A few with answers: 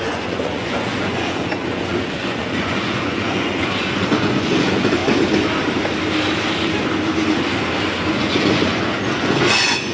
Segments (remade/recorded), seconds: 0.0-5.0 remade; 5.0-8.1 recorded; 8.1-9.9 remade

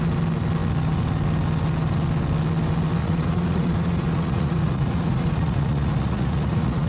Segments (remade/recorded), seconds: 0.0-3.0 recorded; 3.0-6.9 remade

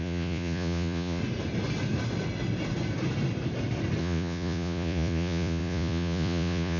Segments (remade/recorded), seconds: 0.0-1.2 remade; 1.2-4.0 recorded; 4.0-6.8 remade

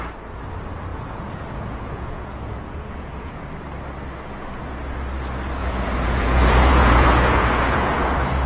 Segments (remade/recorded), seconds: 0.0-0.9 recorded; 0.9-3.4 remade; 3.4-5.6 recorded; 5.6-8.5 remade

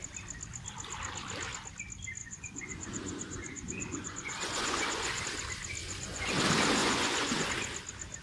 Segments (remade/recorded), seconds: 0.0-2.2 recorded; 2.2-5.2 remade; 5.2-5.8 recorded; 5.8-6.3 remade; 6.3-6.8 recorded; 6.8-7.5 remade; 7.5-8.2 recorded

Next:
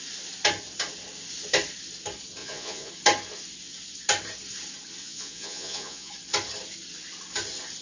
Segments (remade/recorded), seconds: 0.0-2.4 recorded; 2.4-2.9 remade; 2.9-5.0 recorded; 5.0-6.1 remade; 6.1-7.8 recorded

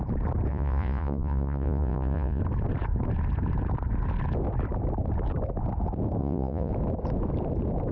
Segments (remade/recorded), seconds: 0.0-0.5 recorded; 0.5-2.4 remade; 2.4-6.2 recorded; 6.2-6.7 remade; 6.7-7.9 recorded

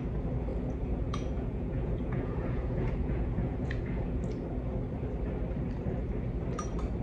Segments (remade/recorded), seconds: 0.0-0.5 recorded; 0.5-4.2 remade; 4.2-7.0 recorded